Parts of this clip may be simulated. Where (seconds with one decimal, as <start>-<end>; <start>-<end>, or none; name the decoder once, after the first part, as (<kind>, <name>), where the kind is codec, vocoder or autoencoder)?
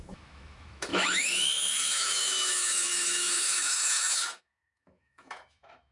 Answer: 0.0-5.9 (autoencoder, DAC-VAE)